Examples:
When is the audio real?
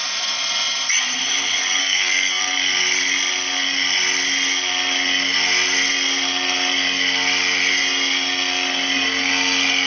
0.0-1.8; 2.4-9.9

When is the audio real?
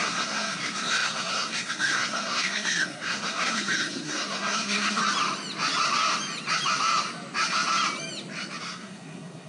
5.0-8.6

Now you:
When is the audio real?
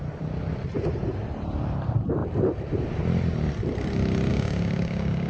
0.0-4.3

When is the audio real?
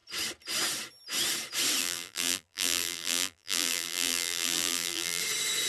0.0-1.8; 5.2-5.7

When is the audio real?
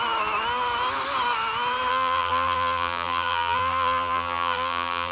0.0-1.9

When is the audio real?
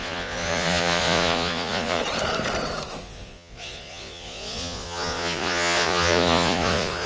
2.0-3.0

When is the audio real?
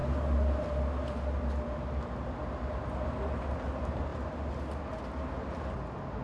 0.0-6.2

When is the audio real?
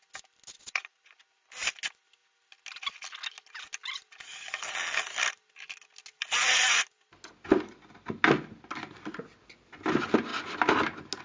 0.0-0.6; 1.1-11.2